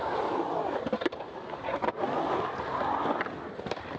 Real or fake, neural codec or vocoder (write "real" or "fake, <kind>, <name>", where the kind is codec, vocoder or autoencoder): real